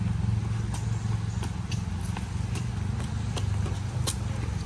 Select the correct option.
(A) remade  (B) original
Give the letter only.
B